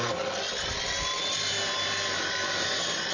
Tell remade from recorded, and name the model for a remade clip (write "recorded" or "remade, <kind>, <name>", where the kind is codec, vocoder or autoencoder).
recorded